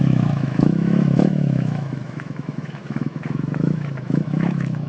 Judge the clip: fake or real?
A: fake